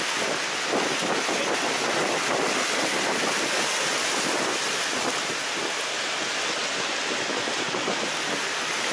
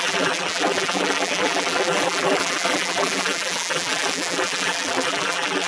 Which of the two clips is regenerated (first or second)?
second